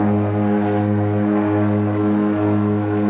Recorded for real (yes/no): no